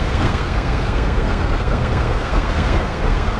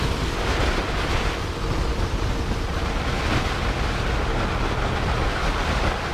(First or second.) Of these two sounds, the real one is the second